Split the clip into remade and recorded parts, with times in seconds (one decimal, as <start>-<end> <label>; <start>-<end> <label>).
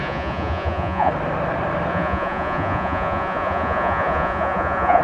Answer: 0.0-1.1 remade; 1.1-1.9 recorded; 1.9-5.0 remade